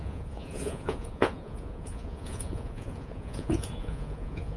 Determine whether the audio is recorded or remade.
remade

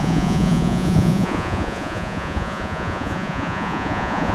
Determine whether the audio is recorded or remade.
remade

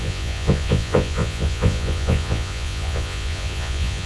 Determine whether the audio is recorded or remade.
remade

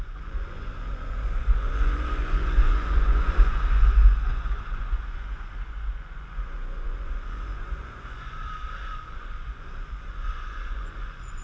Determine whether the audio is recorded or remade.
remade